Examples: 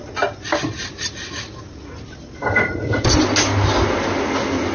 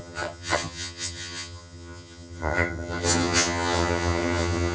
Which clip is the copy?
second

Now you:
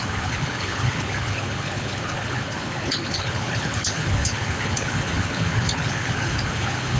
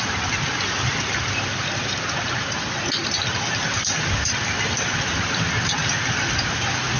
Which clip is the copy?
first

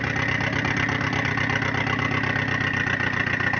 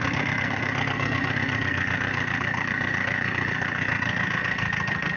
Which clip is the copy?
second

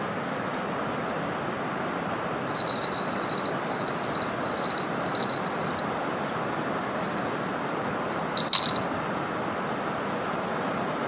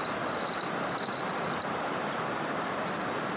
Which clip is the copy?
second